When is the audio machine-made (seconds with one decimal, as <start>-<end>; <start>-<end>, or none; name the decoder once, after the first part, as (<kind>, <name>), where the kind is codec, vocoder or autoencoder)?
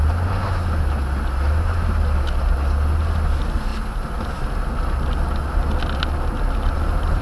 none